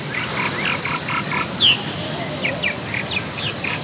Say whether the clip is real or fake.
fake